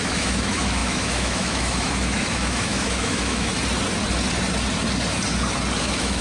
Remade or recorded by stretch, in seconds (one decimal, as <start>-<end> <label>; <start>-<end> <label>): 0.0-3.5 remade; 3.5-5.8 recorded; 5.8-6.2 remade